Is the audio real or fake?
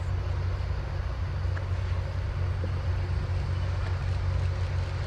real